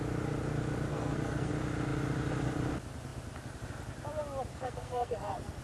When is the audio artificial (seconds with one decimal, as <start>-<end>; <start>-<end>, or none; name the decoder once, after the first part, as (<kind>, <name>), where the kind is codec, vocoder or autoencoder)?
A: 0.9-1.5 (codec, SNAC); 4.5-5.6